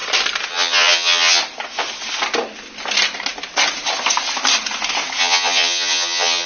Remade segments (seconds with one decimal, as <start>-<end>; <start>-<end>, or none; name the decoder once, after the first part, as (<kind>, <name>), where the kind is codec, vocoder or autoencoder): 0.5-1.4 (vocoder, HiFi-GAN); 5.2-6.5